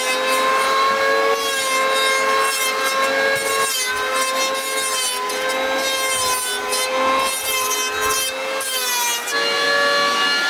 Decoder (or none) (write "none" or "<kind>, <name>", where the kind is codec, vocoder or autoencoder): none